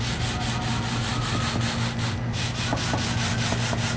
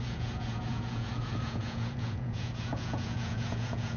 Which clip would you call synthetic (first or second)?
second